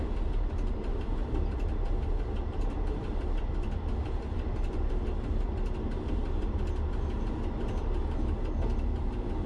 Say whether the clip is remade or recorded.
remade